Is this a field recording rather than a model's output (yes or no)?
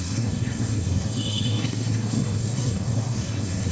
no